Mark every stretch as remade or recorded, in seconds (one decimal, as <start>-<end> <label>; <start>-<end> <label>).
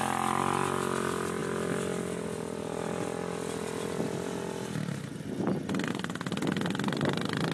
0.0-7.5 recorded